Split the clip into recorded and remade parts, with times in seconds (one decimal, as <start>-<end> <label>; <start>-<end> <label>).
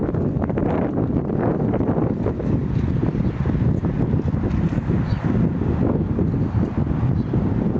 0.0-2.6 recorded; 2.6-3.1 remade; 3.1-7.8 recorded